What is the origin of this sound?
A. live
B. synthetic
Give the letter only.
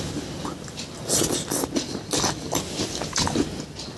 A